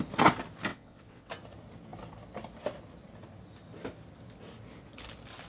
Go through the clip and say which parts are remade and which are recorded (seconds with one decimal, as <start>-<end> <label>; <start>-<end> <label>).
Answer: 0.0-0.7 recorded; 0.7-1.3 remade; 1.3-5.5 recorded